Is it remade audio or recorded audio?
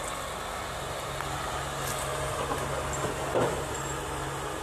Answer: recorded